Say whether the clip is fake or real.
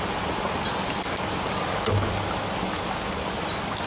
real